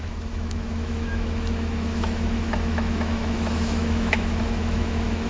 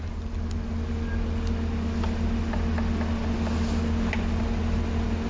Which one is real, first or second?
second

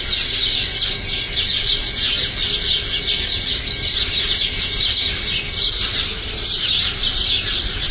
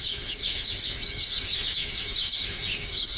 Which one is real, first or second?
first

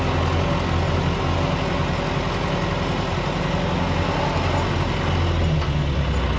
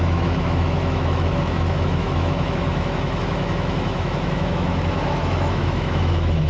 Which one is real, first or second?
first